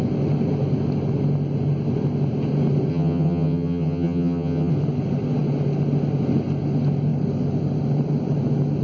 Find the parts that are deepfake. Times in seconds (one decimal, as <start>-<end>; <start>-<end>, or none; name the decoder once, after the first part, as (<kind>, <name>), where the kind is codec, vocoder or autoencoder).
2.9-4.7 (vocoder, HiFi-GAN)